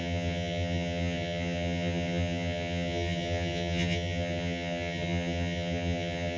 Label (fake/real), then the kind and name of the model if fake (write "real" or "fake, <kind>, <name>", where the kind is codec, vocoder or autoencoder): fake, vocoder, HiFi-GAN